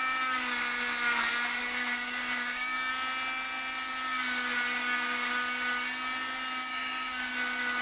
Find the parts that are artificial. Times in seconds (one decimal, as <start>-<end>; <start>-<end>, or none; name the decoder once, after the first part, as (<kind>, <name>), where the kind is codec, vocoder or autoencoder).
1.6-2.9 (codec, DAC); 4.8-5.3; 6.7-7.3